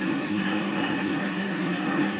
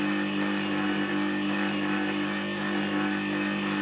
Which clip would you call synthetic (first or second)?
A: first